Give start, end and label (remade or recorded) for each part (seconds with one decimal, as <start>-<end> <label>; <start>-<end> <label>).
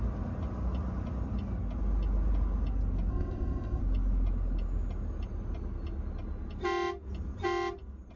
0.0-3.1 recorded; 3.1-3.8 remade; 3.8-8.2 recorded